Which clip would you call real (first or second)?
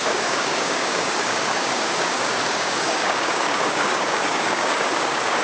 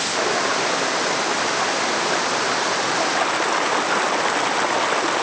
second